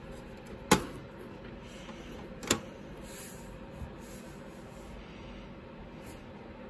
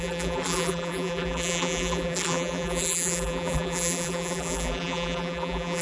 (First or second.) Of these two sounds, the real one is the first